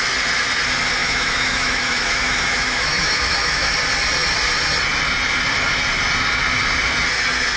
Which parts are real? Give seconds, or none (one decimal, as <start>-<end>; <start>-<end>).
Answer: 0.0-1.0; 3.7-7.6